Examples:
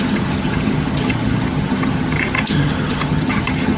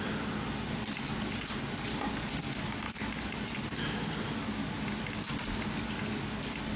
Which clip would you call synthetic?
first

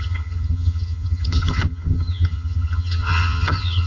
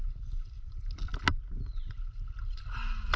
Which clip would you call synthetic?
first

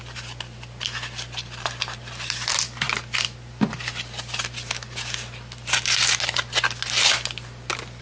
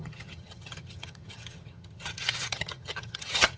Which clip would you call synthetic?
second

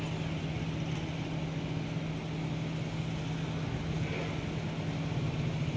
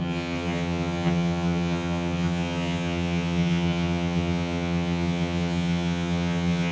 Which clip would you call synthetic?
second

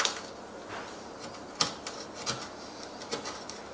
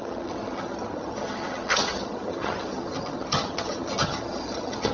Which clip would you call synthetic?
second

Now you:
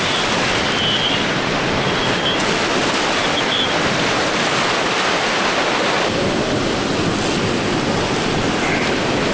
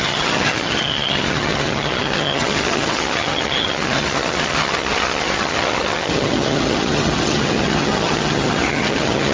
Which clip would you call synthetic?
second